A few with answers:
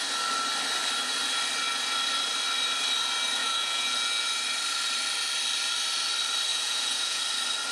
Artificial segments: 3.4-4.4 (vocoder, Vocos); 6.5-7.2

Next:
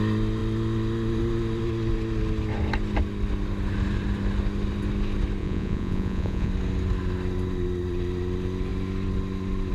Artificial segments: 5.4-6.5 (vocoder, Vocos)

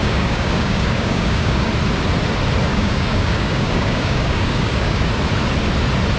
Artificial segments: 0.0-1.7 (codec, DAC); 2.7-5.1

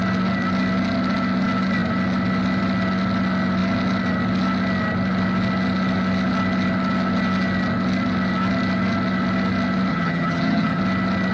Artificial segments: 9.9-10.8 (vocoder, HiFi-GAN)

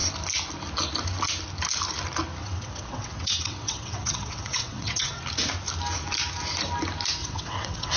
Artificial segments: 2.4-5.2 (vocoder, WaveNeXt); 7.2-8.0

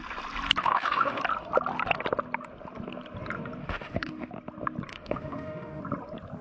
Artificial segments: 0.6-1.2 (autoencoder, DAC-VAE); 3.6-4.3; 4.9-5.8